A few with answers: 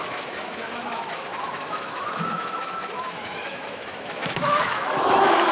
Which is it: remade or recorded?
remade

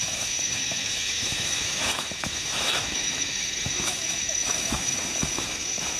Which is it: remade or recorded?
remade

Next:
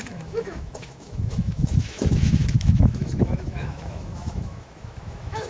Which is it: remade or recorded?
remade